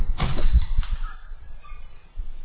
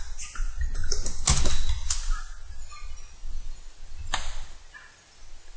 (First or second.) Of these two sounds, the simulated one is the first